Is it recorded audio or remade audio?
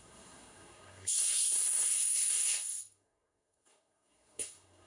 remade